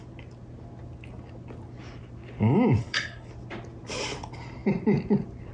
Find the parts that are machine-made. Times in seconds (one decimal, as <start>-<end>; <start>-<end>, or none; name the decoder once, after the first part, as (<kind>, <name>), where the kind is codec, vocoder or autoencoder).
2.8-3.3 (codec, HILCodec)